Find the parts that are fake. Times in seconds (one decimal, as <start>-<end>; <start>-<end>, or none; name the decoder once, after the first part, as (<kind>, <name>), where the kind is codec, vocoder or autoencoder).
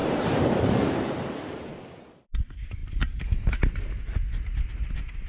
0.0-1.8 (vocoder, BigVGAN v2); 2.8-3.9